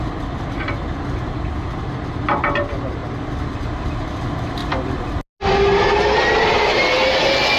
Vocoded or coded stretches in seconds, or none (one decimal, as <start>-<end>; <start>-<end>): none